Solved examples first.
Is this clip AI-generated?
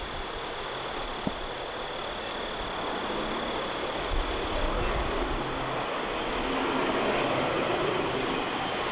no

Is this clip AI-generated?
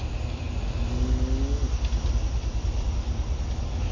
no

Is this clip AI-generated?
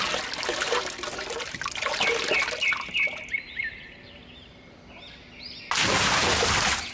no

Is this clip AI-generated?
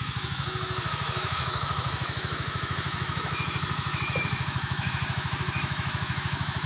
yes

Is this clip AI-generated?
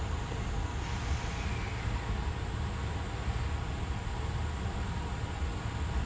no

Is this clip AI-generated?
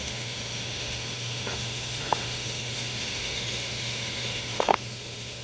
yes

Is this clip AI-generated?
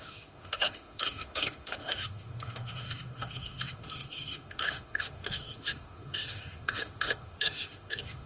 yes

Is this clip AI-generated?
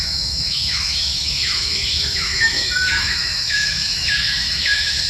yes